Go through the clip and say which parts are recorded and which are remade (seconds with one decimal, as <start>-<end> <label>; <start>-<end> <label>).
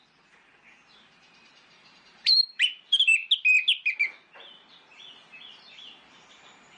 0.0-3.2 remade; 3.2-6.1 recorded; 6.1-6.8 remade